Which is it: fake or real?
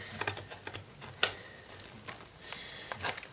real